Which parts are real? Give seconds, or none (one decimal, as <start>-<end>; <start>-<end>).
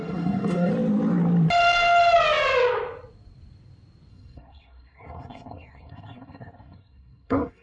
0.7-4.1